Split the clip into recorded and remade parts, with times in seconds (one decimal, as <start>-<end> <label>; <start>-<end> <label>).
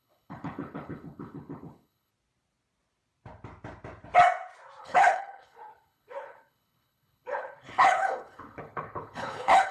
0.0-2.1 remade; 2.1-4.8 recorded; 4.8-9.7 remade